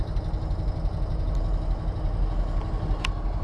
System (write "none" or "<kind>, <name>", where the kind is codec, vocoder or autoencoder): none